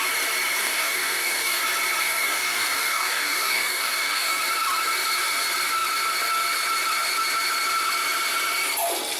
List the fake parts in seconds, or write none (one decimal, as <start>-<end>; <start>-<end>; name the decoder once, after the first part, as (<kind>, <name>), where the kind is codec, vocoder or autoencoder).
0.6-1.6 (codec, DAC); 2.0-4.4